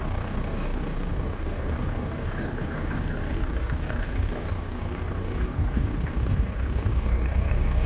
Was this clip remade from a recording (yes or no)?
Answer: yes